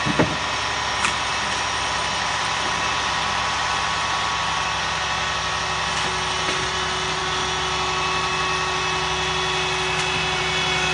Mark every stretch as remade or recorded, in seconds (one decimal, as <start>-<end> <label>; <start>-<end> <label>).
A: 0.0-10.9 recorded